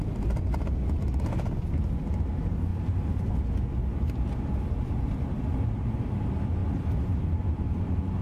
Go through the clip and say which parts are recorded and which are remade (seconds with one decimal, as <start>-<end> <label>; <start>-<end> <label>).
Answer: 0.0-8.2 recorded